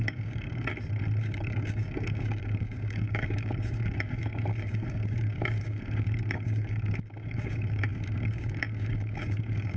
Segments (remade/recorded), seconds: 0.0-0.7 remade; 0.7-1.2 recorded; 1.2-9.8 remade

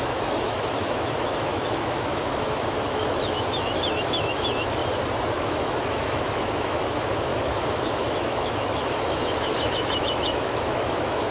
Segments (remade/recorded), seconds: 0.0-4.8 remade; 4.8-5.3 recorded; 5.3-11.3 remade